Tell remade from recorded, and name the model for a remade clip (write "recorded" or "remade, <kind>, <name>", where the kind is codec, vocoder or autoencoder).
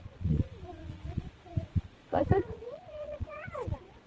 remade, vocoder, Vocos